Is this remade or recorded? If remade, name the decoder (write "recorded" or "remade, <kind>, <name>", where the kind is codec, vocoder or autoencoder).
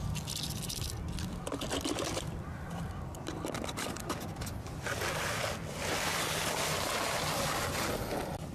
recorded